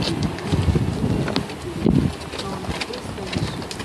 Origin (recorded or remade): recorded